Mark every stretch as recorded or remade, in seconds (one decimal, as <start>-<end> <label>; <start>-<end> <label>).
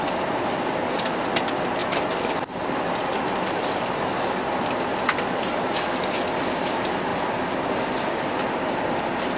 0.0-9.4 recorded